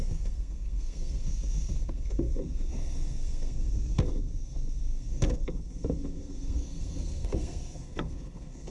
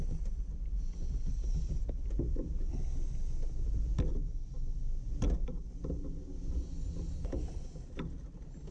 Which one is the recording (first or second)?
second